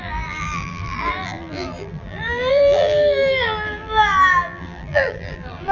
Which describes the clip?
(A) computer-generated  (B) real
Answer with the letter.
A